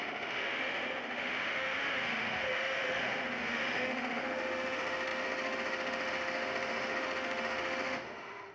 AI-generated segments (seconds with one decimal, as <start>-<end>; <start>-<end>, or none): 0.0-8.5